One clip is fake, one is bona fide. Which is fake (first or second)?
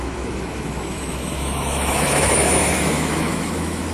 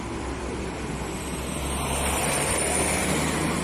first